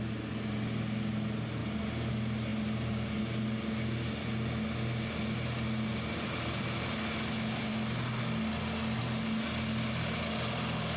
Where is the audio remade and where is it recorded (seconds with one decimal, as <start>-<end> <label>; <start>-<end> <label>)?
0.0-11.0 recorded

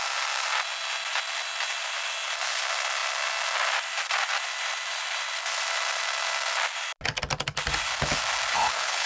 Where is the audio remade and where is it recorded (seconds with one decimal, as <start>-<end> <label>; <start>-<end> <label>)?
0.0-8.5 recorded; 8.5-9.1 remade

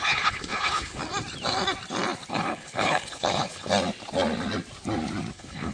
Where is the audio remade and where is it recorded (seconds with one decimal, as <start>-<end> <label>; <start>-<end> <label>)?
0.0-1.0 remade; 1.0-2.3 recorded; 2.3-3.7 remade; 3.7-5.3 recorded; 5.3-5.7 remade

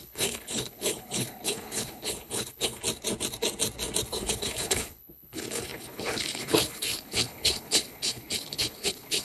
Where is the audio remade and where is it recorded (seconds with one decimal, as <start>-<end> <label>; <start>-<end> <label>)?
0.0-2.8 remade; 2.8-4.1 recorded; 4.1-9.2 remade